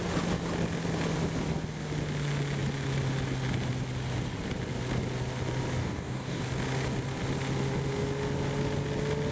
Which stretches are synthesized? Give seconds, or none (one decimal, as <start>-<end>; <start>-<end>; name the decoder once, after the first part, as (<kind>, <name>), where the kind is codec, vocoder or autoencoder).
5.8-6.4 (codec, DAC)